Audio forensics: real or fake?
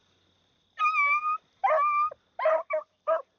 real